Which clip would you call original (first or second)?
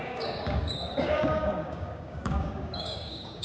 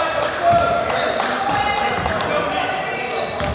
second